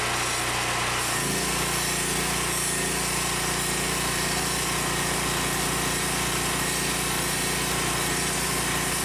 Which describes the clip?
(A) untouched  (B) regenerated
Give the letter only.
A